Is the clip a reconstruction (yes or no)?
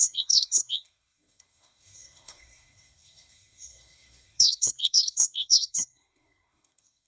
yes